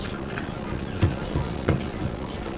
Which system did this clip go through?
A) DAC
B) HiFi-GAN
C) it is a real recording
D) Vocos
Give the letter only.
D